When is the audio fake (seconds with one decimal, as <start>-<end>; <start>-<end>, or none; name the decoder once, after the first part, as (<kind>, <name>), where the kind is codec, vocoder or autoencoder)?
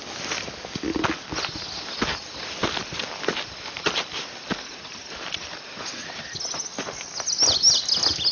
none